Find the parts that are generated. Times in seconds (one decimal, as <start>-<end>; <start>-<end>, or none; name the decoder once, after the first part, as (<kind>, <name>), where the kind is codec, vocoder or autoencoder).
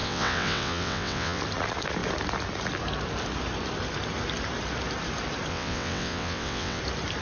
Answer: 0.0-1.4 (vocoder, WaveNeXt); 5.5-6.8